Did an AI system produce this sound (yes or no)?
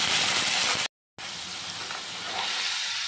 no